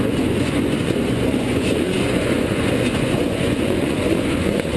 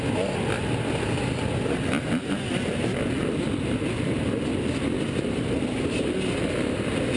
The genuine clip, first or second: second